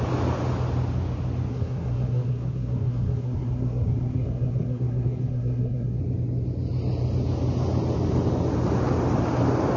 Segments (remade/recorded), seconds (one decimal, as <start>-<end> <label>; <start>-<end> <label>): 0.0-1.5 recorded; 1.5-6.0 remade; 6.0-9.8 recorded